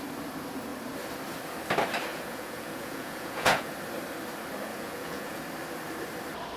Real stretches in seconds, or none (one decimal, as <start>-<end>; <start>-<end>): 0.0-2.1; 3.7-4.7; 5.4-6.6